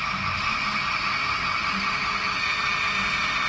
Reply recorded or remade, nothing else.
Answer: recorded